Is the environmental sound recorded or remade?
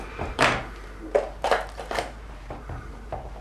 remade